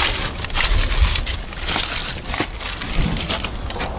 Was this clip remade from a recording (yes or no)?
no